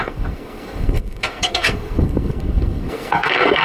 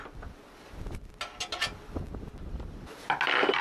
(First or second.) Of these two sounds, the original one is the second